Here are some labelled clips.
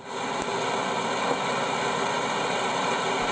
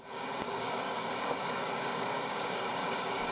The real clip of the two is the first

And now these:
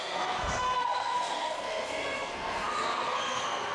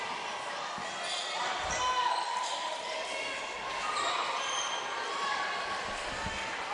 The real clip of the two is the second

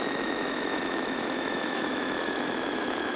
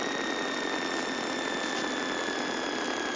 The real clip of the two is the second